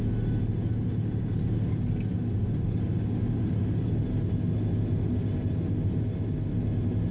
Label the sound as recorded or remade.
recorded